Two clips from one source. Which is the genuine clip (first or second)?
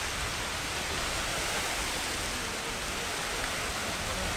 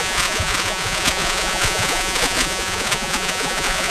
first